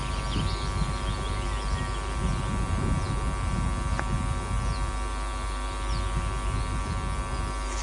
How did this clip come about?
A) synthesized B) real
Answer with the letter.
B